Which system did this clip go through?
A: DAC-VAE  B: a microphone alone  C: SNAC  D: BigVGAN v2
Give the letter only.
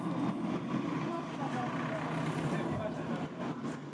B